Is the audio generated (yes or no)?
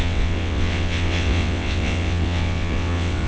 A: yes